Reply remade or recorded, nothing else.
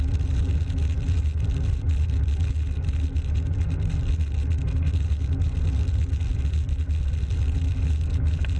recorded